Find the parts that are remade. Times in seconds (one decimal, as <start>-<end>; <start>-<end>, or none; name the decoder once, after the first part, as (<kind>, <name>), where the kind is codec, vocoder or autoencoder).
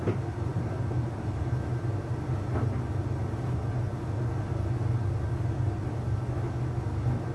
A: none